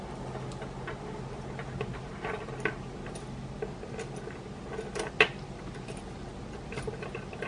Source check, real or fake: real